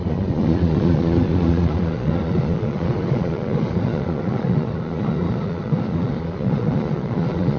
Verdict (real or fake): fake